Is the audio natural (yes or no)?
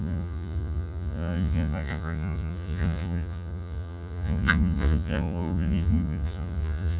no